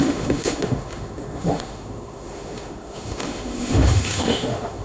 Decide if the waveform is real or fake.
fake